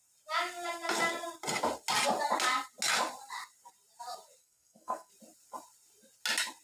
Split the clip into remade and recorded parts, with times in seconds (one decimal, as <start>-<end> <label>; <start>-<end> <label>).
0.0-4.4 recorded; 4.4-5.1 remade; 5.1-6.6 recorded